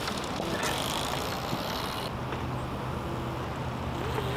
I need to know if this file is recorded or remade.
recorded